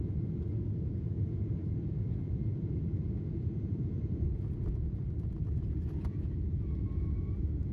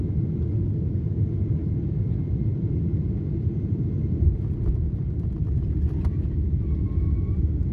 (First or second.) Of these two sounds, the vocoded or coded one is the first